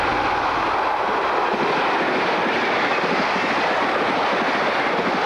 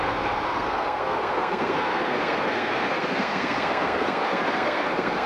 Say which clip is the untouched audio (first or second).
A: first